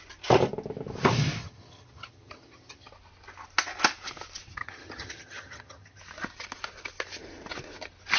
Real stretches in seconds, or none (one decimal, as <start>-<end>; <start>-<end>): 0.0-1.4; 2.9-4.6; 6.0-8.2